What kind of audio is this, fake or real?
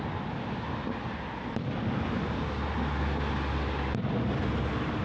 real